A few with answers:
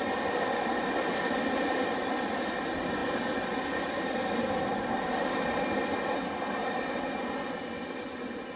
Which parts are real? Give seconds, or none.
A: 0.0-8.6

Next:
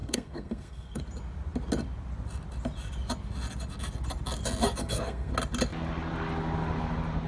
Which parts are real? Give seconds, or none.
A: 1.0-4.8; 5.3-7.3

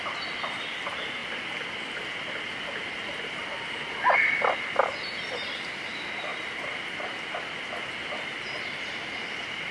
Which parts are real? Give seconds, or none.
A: 0.0-9.7